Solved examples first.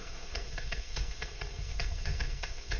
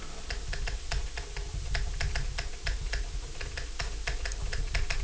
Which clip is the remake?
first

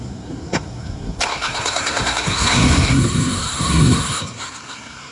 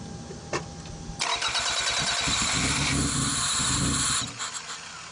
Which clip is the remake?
first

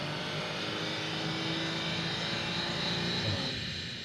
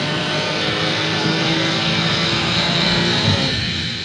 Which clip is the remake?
second